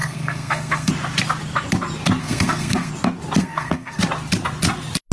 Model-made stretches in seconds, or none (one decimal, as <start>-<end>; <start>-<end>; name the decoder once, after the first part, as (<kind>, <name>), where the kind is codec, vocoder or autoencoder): 0.0-0.9 (codec, SNAC); 2.2-2.9; 3.4-4.0